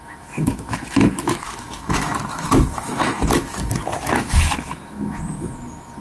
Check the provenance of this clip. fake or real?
fake